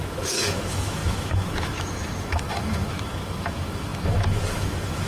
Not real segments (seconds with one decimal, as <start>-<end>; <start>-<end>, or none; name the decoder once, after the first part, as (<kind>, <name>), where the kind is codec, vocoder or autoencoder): 0.0-5.1 (autoencoder, DAC-VAE)